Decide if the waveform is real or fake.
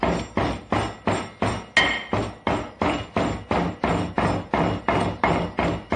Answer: real